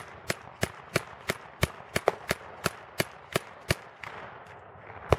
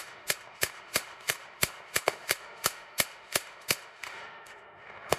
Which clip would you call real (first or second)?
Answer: first